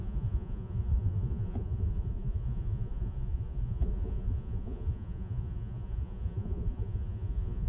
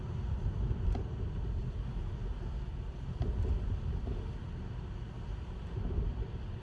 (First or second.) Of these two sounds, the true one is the second